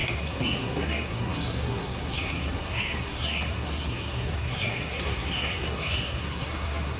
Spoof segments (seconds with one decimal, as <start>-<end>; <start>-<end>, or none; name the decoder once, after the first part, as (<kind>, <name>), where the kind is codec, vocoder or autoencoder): 0.0-7.0 (codec, SNAC)